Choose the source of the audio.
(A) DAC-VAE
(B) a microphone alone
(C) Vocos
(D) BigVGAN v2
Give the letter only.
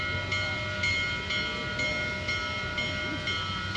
B